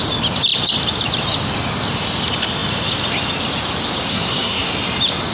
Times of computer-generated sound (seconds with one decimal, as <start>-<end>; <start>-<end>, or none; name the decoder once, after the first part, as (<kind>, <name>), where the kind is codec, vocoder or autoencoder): 4.1-4.7 (codec, SNAC)